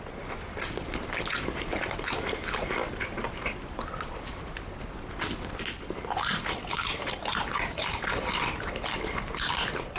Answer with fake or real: real